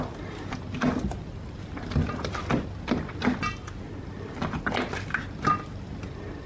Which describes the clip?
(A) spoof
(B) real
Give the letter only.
B